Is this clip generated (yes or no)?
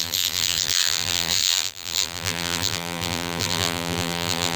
yes